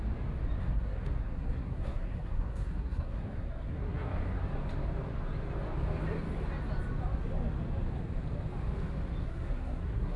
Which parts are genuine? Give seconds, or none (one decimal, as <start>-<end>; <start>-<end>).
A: 0.0-0.6; 4.1-9.2